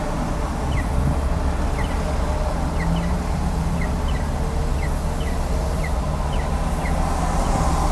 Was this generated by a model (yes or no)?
no